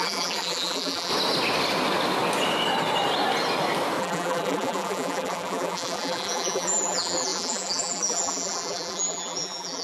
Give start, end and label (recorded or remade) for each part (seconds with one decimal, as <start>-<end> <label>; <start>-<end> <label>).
0.0-1.1 remade; 1.1-4.0 recorded; 4.0-9.8 remade

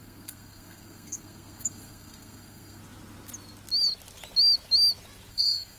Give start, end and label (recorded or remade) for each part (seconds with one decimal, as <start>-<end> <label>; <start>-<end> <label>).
0.0-2.8 remade; 2.8-5.3 recorded; 5.3-5.8 remade

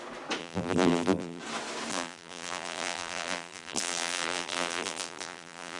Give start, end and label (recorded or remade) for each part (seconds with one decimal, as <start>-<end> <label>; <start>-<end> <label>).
0.0-0.4 recorded; 0.4-1.4 remade; 1.4-1.9 recorded; 1.9-5.8 remade

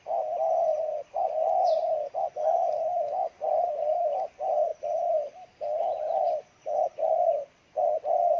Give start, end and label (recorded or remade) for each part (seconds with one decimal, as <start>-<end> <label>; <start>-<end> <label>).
0.0-0.7 recorded; 0.7-2.7 remade; 2.7-3.2 recorded; 3.2-3.9 remade; 3.9-8.4 recorded

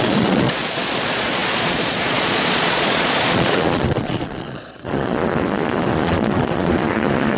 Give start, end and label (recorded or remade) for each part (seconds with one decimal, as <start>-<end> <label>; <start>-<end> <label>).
0.0-7.4 remade